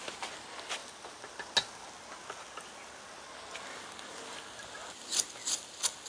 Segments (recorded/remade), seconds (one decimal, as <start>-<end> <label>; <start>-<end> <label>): 0.0-6.1 recorded